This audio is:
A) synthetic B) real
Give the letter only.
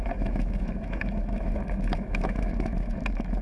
A